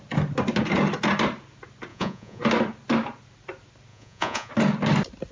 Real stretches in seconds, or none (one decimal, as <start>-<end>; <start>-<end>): 0.0-1.9; 2.4-3.9; 4.5-5.3